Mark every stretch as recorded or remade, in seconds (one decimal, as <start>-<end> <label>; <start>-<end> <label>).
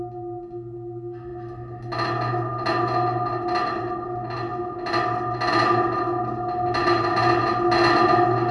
0.0-8.5 recorded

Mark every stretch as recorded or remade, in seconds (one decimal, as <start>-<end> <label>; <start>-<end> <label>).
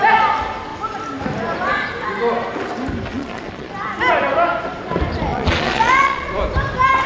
0.0-3.1 recorded; 3.1-3.7 remade; 3.7-5.3 recorded; 5.3-6.3 remade; 6.3-7.1 recorded